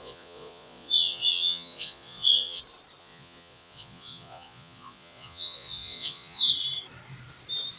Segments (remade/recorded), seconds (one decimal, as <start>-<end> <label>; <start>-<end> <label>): 0.0-2.6 remade; 2.6-3.0 recorded; 3.0-6.5 remade; 6.5-7.8 recorded